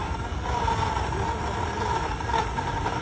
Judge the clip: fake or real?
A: real